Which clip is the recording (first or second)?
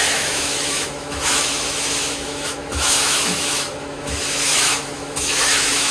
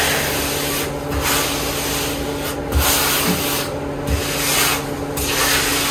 second